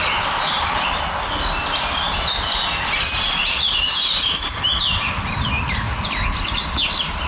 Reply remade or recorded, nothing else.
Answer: recorded